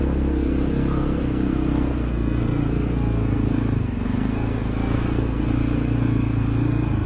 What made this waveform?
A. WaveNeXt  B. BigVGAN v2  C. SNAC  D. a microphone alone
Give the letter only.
C